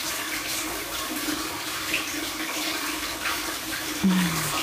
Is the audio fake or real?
fake